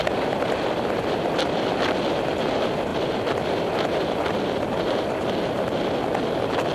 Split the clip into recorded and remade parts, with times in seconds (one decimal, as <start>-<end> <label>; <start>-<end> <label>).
0.0-6.7 remade